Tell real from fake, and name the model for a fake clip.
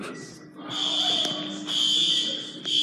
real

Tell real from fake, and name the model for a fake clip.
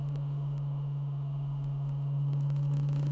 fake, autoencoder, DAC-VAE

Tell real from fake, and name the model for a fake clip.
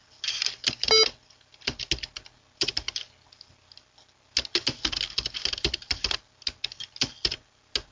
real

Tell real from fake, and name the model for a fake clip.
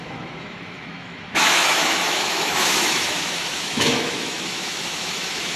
fake, autoencoder, DAC-VAE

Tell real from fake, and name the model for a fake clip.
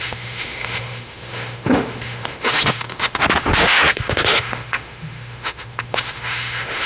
fake, autoencoder, DAC-VAE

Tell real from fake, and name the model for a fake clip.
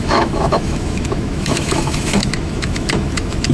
fake, autoencoder, DAC-VAE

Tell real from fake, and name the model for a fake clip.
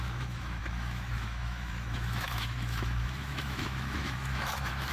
fake, autoencoder, DAC-VAE